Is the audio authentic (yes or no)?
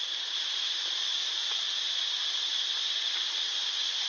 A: yes